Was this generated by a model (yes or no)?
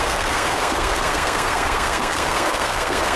yes